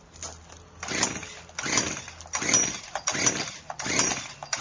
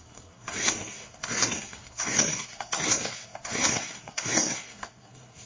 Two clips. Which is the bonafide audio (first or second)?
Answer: first